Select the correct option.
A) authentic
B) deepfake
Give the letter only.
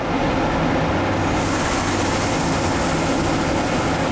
A